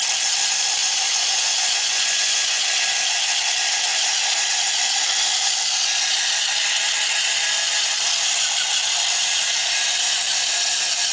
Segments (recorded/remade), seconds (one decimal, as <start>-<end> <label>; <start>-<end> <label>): 0.0-0.8 recorded; 0.8-2.6 remade; 2.6-11.1 recorded